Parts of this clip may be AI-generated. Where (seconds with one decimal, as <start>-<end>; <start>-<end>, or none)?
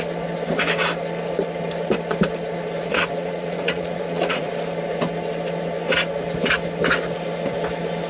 2.8-4.5